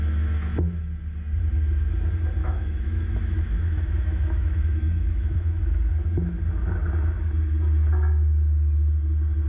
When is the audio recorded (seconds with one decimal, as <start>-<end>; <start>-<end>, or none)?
0.0-2.4; 5.6-9.5